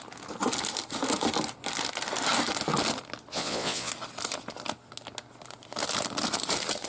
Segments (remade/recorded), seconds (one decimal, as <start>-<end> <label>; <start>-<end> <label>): 0.0-3.3 recorded; 3.3-3.9 remade; 3.9-6.9 recorded